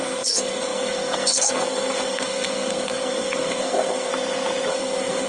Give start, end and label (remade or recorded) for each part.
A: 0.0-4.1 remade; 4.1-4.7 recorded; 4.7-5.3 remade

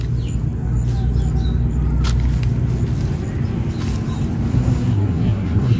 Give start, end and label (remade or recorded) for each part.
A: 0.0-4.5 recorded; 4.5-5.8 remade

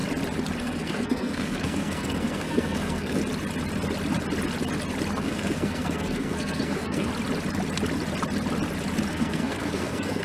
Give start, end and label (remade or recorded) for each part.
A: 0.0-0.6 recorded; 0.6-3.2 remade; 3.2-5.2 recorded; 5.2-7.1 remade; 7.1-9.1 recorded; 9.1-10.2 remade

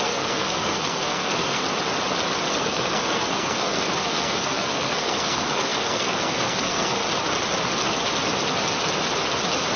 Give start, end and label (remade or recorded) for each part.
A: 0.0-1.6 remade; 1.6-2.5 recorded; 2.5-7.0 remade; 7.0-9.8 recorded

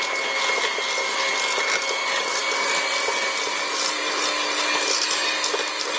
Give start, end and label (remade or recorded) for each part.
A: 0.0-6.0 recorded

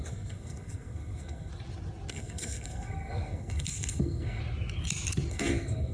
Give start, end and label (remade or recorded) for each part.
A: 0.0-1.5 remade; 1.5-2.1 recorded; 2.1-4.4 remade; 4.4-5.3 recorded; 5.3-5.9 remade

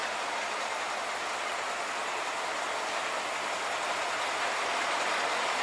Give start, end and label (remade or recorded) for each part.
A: 0.0-5.6 recorded